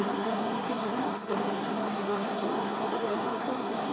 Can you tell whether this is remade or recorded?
remade